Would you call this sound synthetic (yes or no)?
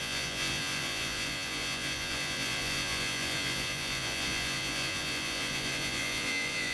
yes